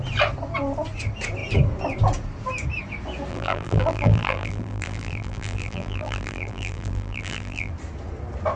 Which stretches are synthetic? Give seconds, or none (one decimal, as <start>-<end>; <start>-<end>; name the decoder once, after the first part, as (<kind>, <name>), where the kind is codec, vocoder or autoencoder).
3.3-7.7 (vocoder, BigVGAN v2)